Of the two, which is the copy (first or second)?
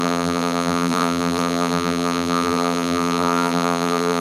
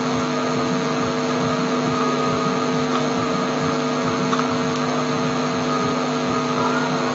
first